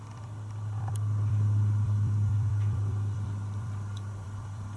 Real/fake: fake